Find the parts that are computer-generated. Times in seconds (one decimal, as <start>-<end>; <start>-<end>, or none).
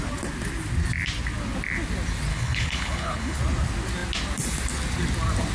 2.3-3.4